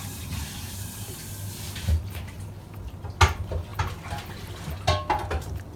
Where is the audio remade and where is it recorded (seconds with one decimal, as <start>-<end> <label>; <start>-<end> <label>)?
0.0-1.1 remade; 1.1-5.8 recorded